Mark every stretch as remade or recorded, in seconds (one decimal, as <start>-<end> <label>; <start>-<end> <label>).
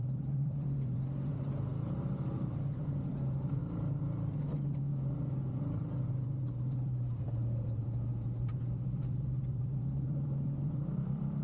0.0-1.7 remade; 1.7-2.2 recorded; 2.2-3.6 remade; 3.6-4.4 recorded; 4.4-11.4 remade